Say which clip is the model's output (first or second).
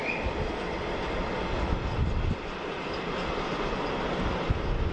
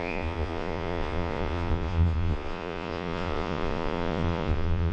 second